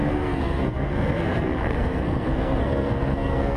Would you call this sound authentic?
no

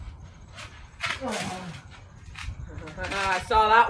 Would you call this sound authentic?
yes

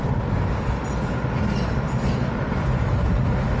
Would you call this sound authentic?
yes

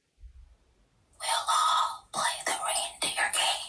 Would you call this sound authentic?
yes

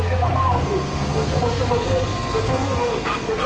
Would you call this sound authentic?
no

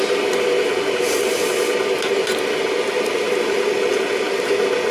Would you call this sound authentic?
yes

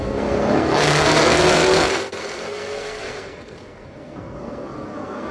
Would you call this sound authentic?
no